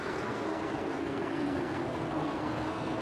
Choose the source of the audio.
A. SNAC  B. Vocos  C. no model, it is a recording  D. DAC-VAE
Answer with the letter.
A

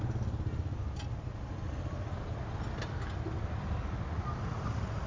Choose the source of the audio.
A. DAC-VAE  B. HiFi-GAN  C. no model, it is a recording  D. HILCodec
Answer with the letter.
C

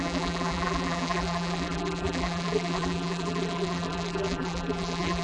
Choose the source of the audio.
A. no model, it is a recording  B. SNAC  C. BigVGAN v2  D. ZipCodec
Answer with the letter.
C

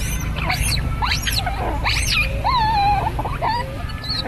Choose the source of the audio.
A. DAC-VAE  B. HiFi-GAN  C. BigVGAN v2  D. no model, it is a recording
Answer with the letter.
D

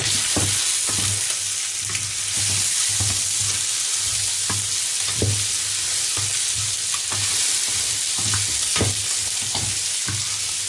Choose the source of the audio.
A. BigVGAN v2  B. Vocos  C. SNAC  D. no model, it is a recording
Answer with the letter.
D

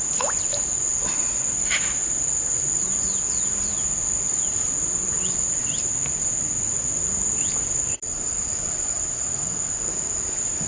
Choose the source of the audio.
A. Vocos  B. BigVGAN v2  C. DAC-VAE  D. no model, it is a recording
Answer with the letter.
D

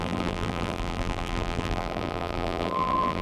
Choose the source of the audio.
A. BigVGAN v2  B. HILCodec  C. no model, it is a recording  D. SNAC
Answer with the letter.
A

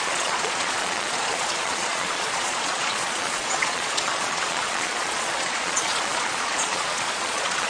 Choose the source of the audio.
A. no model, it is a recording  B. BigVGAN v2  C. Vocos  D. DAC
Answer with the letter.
C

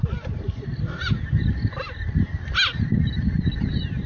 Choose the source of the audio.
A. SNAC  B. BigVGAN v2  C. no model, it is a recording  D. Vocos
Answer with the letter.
C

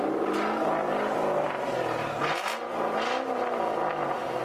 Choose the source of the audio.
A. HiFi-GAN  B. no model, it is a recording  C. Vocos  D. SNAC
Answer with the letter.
B